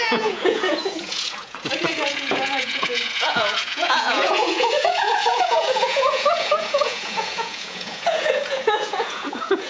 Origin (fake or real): fake